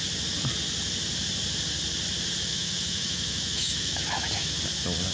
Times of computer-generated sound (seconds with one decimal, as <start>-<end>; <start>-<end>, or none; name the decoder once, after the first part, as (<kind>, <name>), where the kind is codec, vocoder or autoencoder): 2.5-4.6 (autoencoder, DAC-VAE)